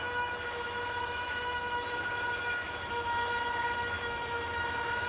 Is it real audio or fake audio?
fake